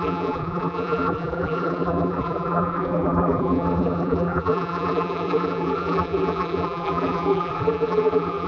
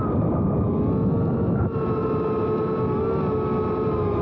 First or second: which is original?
second